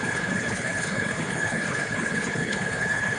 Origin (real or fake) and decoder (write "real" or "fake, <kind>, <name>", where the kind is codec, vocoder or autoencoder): fake, codec, HILCodec